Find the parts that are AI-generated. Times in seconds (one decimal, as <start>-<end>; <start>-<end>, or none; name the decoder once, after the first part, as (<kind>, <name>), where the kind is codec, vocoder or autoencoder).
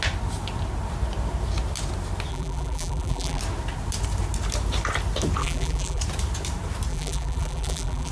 2.3-3.4 (vocoder, BigVGAN v2); 5.4-6.0; 6.9-8.1